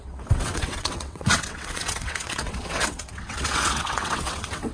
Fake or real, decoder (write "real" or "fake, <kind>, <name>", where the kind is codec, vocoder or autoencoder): fake, vocoder, WaveNeXt